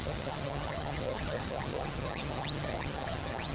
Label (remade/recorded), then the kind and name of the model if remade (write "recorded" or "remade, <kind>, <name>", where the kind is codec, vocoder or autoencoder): remade, vocoder, HiFi-GAN